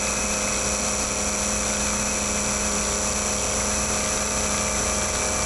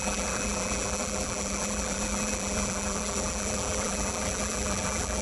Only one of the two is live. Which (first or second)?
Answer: first